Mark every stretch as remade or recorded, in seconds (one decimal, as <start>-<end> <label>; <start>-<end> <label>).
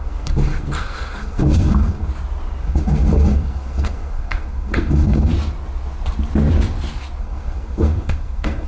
0.0-2.1 remade; 2.1-2.6 recorded; 2.6-5.3 remade; 5.3-7.2 recorded; 7.2-8.7 remade